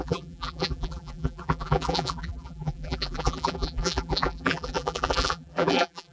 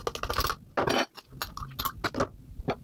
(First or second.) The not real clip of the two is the first